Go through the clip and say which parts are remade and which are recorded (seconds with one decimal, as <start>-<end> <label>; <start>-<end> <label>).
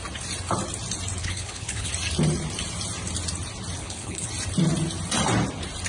0.0-1.2 recorded; 1.2-1.9 remade; 1.9-3.8 recorded; 3.8-4.3 remade; 4.3-5.9 recorded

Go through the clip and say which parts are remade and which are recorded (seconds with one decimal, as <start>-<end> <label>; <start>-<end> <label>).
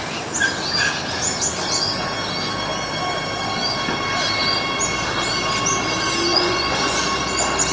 0.0-6.3 recorded; 6.3-7.0 remade; 7.0-7.7 recorded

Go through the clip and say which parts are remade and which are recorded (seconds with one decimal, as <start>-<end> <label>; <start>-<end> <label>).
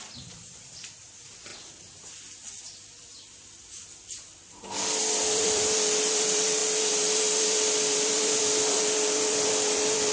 0.0-1.5 remade; 1.5-5.0 recorded; 5.0-10.1 remade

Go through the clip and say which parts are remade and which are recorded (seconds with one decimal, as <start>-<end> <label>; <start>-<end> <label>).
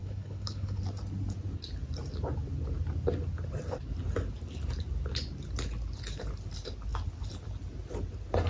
0.0-0.8 remade; 0.8-8.5 recorded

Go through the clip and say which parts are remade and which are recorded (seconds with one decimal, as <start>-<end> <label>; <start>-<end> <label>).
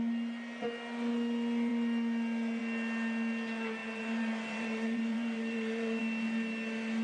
0.0-3.8 recorded; 3.8-6.0 remade; 6.0-7.0 recorded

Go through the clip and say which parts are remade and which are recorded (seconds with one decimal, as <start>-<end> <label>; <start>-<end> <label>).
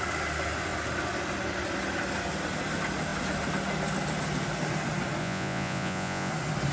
0.0-5.2 recorded; 5.2-6.3 remade; 6.3-6.7 recorded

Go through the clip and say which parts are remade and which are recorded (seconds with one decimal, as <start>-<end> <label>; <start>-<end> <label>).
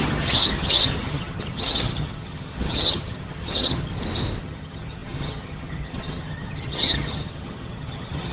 0.0-3.9 remade; 3.9-4.4 recorded; 4.4-8.3 remade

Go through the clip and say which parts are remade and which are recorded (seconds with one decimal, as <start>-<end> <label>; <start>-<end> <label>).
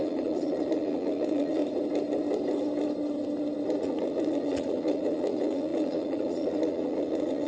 0.0-1.6 remade; 1.6-3.8 recorded; 3.8-7.5 remade